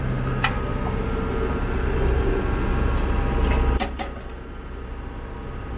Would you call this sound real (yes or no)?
yes